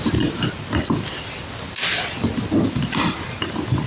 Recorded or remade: recorded